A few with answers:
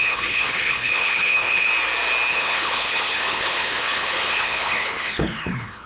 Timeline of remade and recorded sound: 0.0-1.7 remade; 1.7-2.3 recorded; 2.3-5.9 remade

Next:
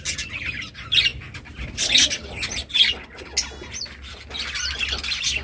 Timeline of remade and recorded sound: 0.0-5.4 recorded

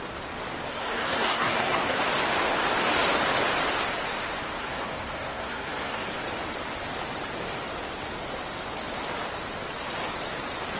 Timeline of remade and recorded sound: 0.0-0.7 recorded; 0.7-2.0 remade; 2.0-4.6 recorded; 4.6-6.1 remade; 6.1-10.8 recorded

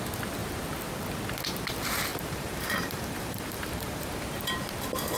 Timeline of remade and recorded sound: 0.0-2.1 recorded; 2.1-4.1 remade; 4.1-5.2 recorded

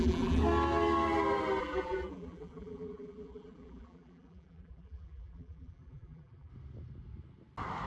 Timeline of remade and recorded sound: 0.0-0.4 remade; 0.4-1.6 recorded; 1.6-6.5 remade; 6.5-7.9 recorded